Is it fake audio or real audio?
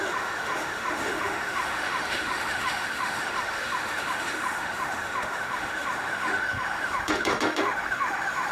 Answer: fake